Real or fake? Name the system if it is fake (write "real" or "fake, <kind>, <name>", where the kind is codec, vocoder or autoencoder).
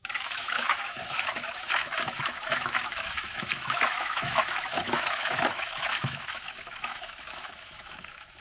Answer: fake, autoencoder, DAC-VAE